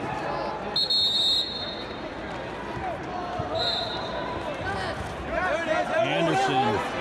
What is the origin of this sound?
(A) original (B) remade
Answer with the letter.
A